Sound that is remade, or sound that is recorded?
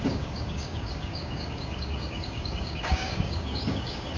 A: remade